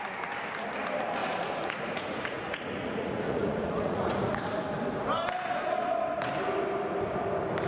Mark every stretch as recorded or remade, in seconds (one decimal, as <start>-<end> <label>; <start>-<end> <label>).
0.0-1.2 recorded; 1.2-4.4 remade; 4.4-7.7 recorded